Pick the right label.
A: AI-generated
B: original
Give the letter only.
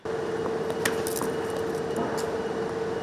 B